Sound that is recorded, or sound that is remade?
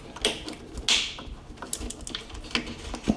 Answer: recorded